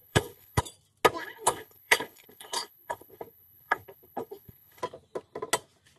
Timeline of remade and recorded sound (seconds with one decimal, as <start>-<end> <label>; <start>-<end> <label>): 0.0-0.6 remade; 0.6-1.2 recorded; 1.2-4.8 remade; 4.8-6.0 recorded